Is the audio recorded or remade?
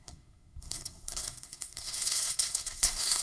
remade